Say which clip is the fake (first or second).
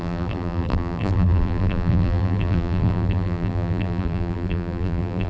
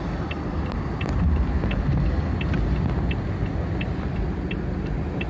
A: first